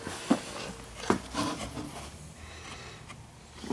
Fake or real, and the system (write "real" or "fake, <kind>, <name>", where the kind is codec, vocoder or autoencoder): real